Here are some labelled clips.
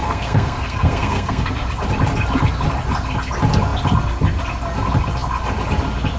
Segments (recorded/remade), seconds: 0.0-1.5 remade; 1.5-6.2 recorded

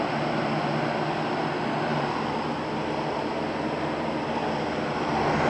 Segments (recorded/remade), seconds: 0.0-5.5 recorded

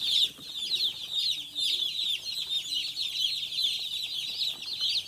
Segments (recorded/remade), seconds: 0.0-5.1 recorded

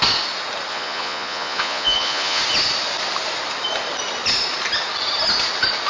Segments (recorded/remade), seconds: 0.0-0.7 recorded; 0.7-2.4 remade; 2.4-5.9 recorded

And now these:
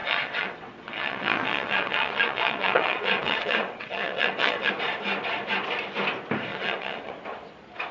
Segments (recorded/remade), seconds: 0.0-4.7 remade; 4.7-6.5 recorded; 6.5-7.1 remade; 7.1-7.9 recorded